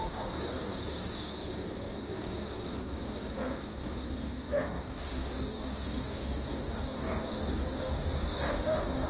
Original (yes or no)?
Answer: no